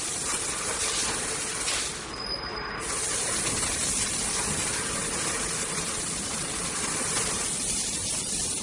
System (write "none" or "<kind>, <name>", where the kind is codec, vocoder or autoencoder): vocoder, BigVGAN v2